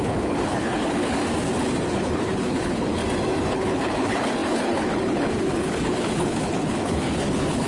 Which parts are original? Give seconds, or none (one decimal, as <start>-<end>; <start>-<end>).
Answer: 1.2-1.9; 3.0-3.5